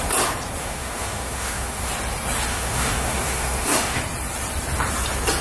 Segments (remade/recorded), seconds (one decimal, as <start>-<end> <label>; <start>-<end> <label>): 0.0-0.6 recorded; 0.6-1.9 remade; 1.9-2.5 recorded; 2.5-4.0 remade; 4.0-5.4 recorded